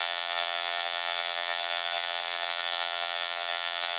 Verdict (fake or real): fake